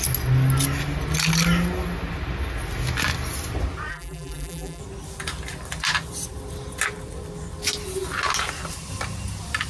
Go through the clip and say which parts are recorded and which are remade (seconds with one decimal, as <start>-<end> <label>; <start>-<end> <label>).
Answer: 0.0-3.9 recorded; 3.9-4.8 remade; 4.8-9.7 recorded